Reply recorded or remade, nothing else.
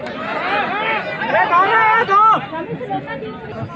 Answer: recorded